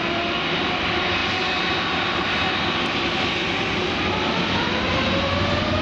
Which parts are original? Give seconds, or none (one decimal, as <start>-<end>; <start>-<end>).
0.0-5.8